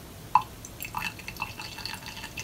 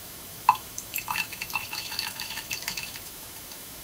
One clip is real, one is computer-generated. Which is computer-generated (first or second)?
second